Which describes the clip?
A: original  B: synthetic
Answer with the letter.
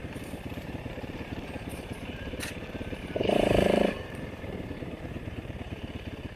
B